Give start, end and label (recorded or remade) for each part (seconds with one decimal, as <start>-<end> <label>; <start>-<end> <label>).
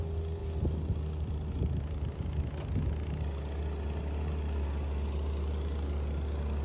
0.0-6.6 recorded